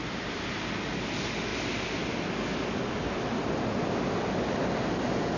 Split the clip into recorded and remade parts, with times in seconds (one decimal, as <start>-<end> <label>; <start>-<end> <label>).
0.0-5.4 recorded